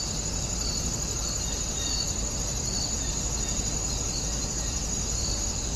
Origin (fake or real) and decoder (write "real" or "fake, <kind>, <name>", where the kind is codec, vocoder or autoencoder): fake, vocoder, BigVGAN v2